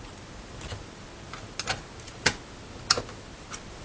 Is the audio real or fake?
real